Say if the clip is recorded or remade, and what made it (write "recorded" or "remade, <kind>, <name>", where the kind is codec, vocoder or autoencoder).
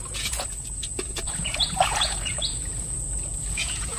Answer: remade, vocoder, Vocos